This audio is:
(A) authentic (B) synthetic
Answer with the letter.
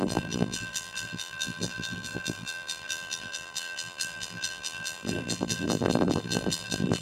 B